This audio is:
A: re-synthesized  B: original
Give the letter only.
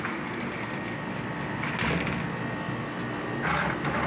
B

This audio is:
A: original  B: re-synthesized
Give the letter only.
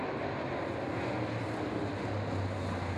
A